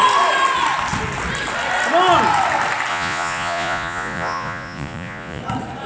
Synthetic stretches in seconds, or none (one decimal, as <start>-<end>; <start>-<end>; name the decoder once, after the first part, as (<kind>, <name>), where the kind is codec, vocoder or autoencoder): 2.9-5.4 (vocoder, Vocos)